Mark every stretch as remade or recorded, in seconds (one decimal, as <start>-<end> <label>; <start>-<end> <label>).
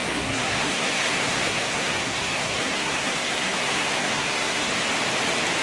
0.0-4.7 remade; 4.7-5.6 recorded